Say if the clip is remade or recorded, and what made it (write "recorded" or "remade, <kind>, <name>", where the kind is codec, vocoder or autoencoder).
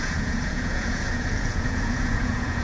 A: remade, vocoder, Vocos